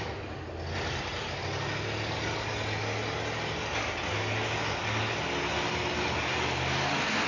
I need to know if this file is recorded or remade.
recorded